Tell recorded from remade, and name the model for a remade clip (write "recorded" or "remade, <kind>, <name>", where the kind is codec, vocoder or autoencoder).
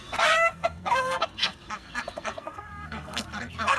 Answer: remade, codec, SNAC